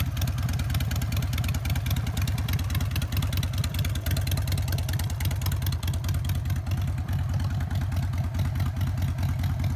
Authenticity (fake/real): real